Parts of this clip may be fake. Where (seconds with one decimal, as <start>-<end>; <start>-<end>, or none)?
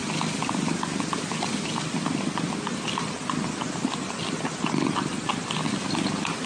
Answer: none